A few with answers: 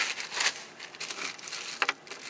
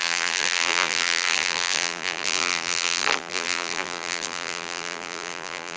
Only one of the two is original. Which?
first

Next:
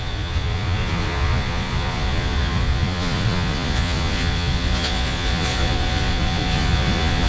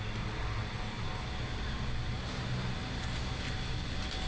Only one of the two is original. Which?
second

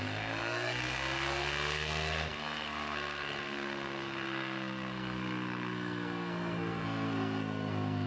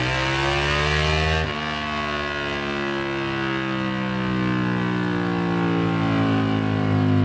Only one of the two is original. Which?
second